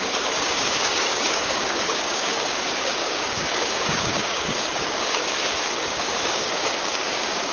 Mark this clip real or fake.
fake